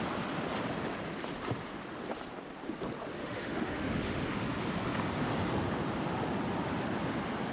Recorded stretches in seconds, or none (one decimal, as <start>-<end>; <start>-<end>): 0.0-3.2; 4.2-7.5

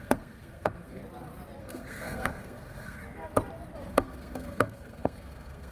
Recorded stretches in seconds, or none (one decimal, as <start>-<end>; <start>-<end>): 1.0-1.6; 3.0-3.9

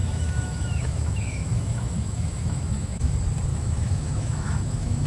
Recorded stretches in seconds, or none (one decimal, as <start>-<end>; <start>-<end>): 3.1-3.5

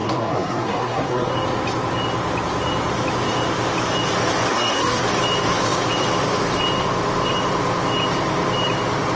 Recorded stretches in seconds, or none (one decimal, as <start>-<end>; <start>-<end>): 1.3-4.5; 5.0-9.2